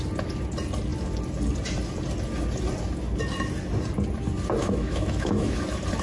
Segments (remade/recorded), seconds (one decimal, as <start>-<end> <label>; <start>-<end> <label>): 0.0-4.6 recorded; 4.6-5.6 remade; 5.6-6.0 recorded